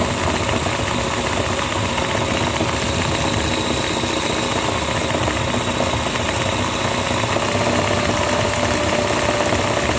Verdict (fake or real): real